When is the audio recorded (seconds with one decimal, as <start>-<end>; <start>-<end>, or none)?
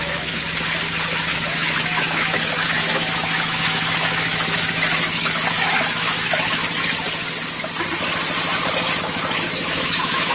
0.4-1.3; 6.6-9.0